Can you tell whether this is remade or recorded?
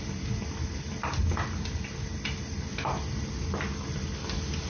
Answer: recorded